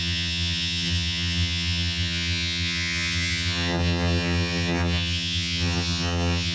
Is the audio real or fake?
fake